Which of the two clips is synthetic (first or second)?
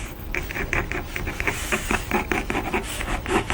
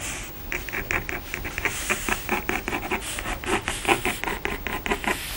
first